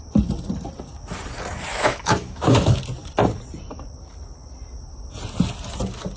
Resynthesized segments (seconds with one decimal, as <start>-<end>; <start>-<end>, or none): 1.7-2.8